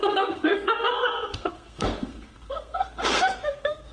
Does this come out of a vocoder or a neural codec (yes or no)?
yes